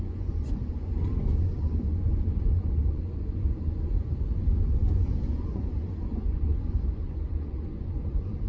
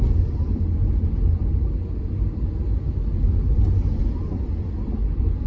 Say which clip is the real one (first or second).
second